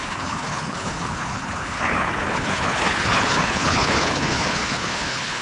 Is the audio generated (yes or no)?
yes